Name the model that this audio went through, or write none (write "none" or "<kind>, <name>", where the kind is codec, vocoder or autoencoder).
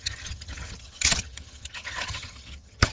vocoder, HiFi-GAN